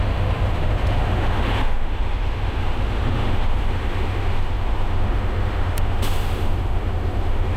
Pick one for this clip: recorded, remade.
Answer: remade